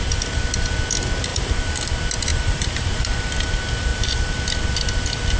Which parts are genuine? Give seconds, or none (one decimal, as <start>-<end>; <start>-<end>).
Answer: 0.0-1.3; 1.9-2.3; 3.5-3.9; 4.7-5.4